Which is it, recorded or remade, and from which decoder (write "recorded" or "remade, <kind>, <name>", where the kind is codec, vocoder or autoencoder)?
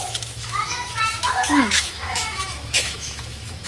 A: remade, autoencoder, DAC-VAE